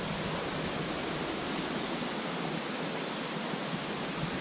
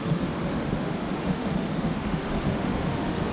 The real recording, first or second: first